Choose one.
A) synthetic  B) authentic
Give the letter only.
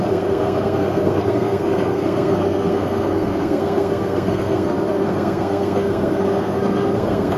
A